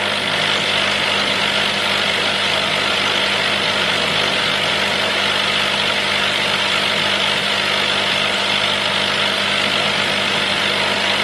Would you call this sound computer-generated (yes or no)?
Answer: no